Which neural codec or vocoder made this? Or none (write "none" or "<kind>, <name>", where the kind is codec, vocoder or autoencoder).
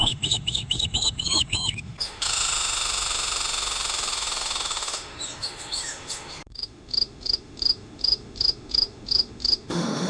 autoencoder, DAC-VAE